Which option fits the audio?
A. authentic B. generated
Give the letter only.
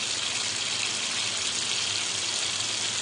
A